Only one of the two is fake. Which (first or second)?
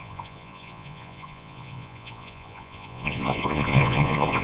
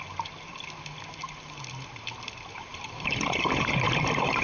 first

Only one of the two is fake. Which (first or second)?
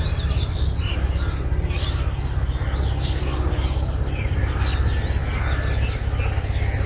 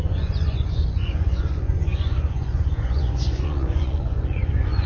second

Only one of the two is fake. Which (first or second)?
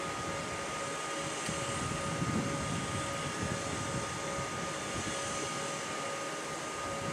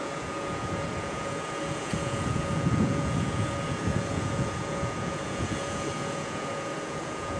second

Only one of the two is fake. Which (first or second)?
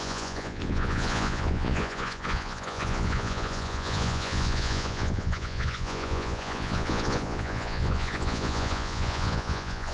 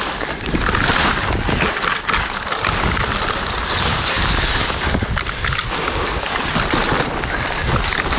first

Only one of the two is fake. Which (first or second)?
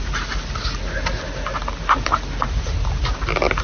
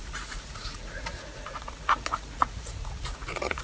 second